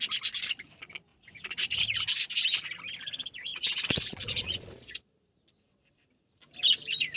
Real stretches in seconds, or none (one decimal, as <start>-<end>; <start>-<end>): 0.0-3.5; 5.1-7.2